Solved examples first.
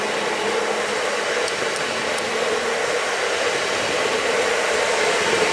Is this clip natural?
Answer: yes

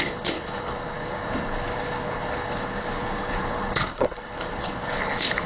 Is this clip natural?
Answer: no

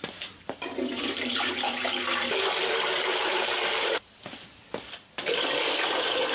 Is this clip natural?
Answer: no